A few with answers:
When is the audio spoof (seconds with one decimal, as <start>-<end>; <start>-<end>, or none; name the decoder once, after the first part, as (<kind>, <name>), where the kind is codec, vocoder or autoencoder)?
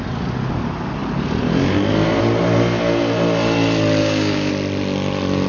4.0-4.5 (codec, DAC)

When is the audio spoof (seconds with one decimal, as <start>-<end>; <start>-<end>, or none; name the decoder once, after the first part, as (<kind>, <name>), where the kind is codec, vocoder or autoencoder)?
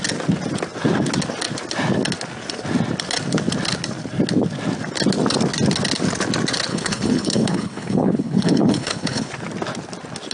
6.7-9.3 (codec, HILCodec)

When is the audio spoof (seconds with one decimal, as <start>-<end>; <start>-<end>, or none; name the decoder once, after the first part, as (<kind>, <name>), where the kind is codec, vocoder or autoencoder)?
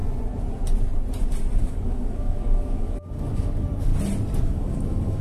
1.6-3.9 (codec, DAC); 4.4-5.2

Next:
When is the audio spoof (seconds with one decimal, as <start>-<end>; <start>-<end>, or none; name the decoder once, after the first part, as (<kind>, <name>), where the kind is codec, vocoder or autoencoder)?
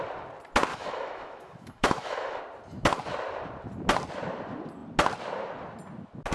0.7-2.4 (autoencoder, DAC-VAE)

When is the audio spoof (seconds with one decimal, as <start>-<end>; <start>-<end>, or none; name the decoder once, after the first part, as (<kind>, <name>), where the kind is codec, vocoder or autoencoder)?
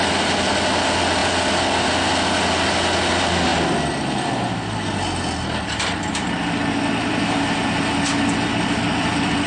none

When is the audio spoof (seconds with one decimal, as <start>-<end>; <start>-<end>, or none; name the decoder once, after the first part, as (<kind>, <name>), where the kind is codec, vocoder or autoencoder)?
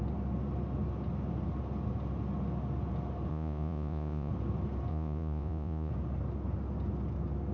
3.3-4.3 (vocoder, Vocos); 4.9-5.9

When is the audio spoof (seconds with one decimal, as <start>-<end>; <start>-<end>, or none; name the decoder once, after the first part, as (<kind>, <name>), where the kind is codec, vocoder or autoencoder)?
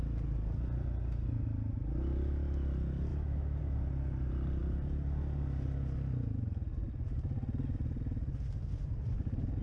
3.1-3.6 (autoencoder, DAC-VAE)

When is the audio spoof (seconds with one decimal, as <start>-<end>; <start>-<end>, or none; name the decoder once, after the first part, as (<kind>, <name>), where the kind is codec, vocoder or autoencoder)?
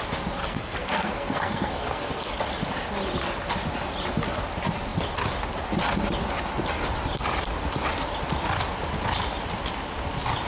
0.4-2.3 (codec, SNAC)